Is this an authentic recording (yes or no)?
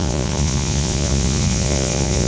no